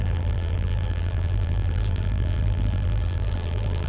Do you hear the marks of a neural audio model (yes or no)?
yes